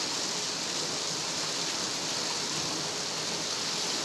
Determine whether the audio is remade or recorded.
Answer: recorded